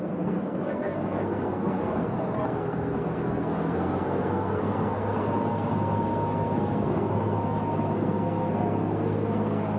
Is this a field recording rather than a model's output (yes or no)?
no